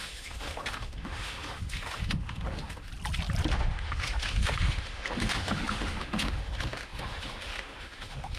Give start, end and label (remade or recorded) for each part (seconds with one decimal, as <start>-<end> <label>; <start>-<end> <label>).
0.0-2.9 remade; 2.9-3.5 recorded; 3.5-8.4 remade